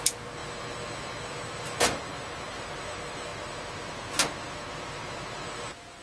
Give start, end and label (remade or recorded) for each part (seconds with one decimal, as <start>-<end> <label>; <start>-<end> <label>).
0.0-6.0 recorded

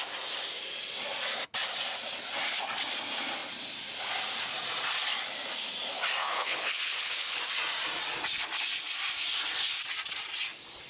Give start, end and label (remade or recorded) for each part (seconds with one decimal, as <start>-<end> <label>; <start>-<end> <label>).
0.0-6.2 recorded; 6.2-7.4 remade; 7.4-10.9 recorded